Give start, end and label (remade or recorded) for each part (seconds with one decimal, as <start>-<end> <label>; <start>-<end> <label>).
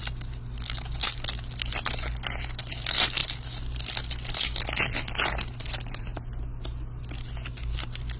0.0-8.2 recorded